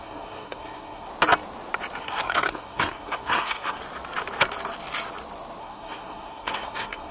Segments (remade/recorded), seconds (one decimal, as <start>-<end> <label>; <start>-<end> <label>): 0.0-1.1 remade; 1.1-2.0 recorded; 2.0-3.8 remade; 3.8-5.6 recorded; 5.6-7.1 remade